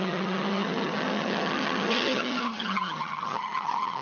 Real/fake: fake